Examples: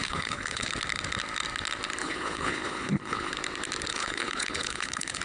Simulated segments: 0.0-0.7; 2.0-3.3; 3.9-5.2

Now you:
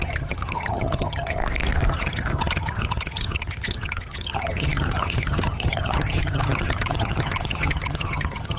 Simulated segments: 0.0-1.4; 1.9-8.6

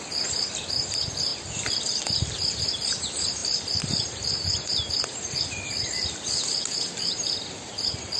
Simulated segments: none